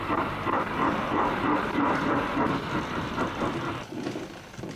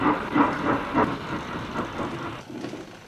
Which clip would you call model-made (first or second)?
first